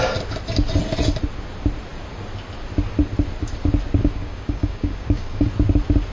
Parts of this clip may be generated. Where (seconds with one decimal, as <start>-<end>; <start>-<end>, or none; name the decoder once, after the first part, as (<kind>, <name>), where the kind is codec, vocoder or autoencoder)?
4.0-5.5 (codec, DAC)